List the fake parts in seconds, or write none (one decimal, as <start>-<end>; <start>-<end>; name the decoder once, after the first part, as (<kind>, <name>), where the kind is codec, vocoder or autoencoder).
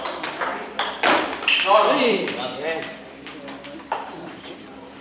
0.0-0.5 (vocoder, BigVGAN v2); 1.2-5.0